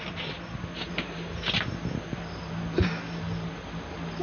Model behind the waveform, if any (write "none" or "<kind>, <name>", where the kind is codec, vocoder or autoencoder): none